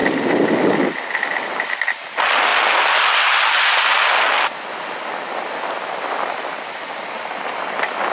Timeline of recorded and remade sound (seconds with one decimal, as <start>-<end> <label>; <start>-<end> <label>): 0.0-8.1 recorded